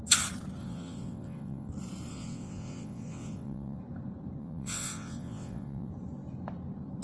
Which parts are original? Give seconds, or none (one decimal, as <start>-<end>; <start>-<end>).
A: 0.0-0.6; 1.7-2.1; 3.8-4.4; 5.9-7.0